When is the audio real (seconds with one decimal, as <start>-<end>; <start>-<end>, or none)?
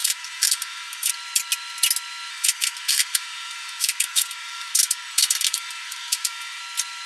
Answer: 1.1-2.3; 6.6-7.1